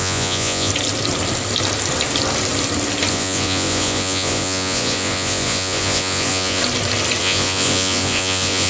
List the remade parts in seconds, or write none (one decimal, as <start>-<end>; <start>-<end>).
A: 0.0-0.7; 3.1-6.6; 7.2-8.7